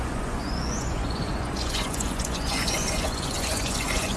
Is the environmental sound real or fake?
fake